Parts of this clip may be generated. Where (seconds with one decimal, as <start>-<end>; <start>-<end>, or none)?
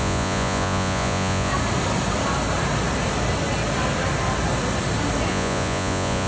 0.0-1.5; 5.3-6.3